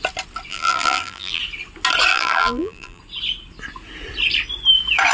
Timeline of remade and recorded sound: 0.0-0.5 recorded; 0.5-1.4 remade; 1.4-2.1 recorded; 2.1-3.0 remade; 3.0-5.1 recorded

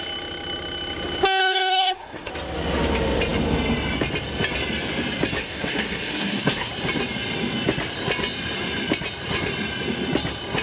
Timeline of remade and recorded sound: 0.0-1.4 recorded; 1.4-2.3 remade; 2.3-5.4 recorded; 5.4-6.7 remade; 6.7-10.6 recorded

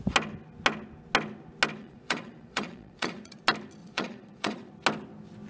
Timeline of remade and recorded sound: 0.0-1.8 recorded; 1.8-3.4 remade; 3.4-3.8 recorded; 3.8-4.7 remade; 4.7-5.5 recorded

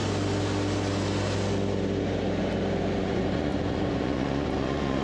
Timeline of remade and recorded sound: 0.0-3.0 recorded; 3.0-5.0 remade

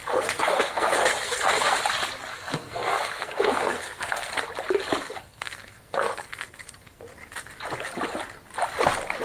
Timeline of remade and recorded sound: 0.0-1.8 remade; 1.8-2.3 recorded; 2.3-4.3 remade; 4.3-5.0 recorded; 5.0-7.0 remade; 7.0-9.2 recorded